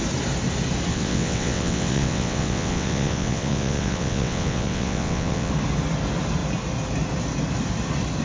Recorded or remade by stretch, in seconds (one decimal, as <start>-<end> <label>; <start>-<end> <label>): 0.0-0.9 recorded; 0.9-5.5 remade; 5.5-8.2 recorded